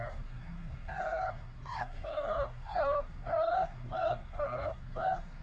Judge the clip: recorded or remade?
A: remade